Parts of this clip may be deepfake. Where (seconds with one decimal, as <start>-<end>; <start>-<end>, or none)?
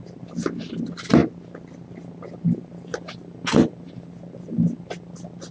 none